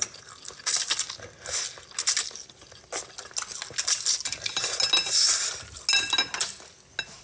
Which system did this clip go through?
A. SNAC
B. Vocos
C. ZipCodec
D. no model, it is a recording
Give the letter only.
D